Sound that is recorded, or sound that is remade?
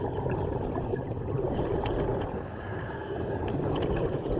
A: recorded